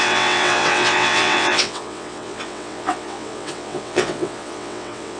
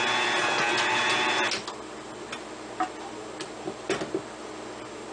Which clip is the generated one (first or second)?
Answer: first